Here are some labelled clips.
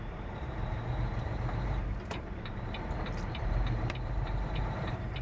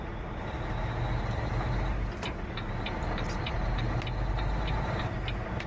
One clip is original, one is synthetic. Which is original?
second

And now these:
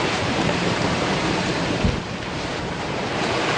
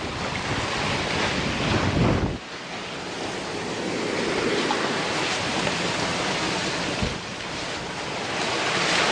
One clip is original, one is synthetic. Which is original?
second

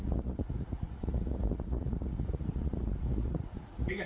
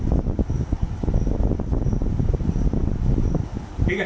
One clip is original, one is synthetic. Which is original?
second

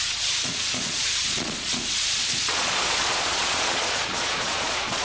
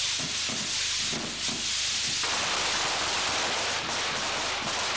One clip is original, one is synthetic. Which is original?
second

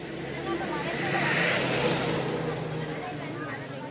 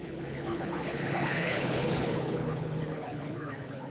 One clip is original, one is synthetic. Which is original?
first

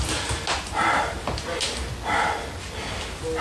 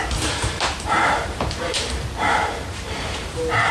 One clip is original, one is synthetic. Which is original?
first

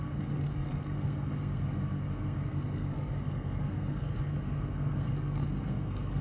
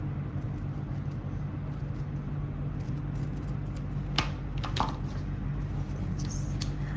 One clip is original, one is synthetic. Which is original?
second